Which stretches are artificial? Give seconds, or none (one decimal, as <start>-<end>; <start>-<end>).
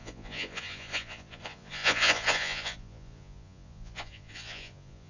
0.0-5.1